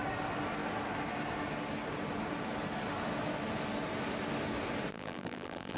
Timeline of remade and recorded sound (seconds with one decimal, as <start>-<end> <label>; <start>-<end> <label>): 0.0-4.9 recorded; 4.9-5.8 remade